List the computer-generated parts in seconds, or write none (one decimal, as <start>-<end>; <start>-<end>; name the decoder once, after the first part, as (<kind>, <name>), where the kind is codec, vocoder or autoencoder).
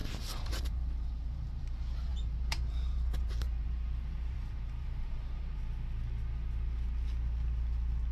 0.0-1.6 (vocoder, BigVGAN v2); 2.1-5.6